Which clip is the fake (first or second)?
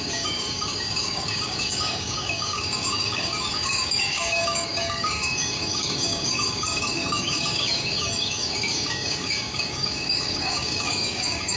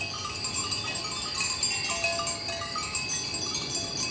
first